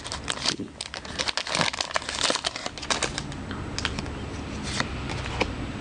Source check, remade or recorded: recorded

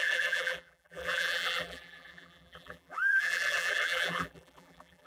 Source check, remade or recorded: remade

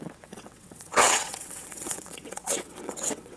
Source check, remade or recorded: remade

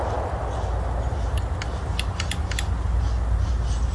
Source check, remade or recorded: recorded